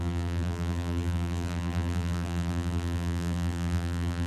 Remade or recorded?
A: remade